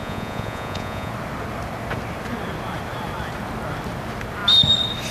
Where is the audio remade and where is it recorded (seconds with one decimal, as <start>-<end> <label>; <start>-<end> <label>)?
0.0-1.1 remade; 1.1-5.1 recorded